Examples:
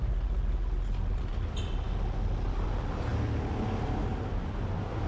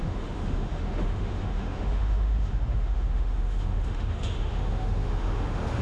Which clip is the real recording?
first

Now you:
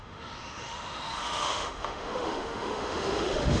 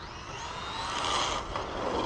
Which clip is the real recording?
second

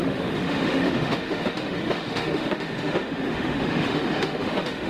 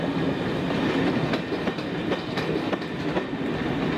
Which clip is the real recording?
second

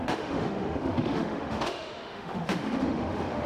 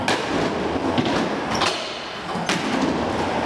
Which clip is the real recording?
second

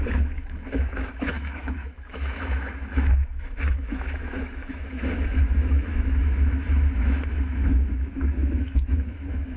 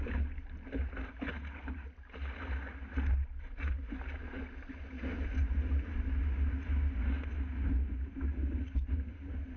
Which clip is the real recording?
second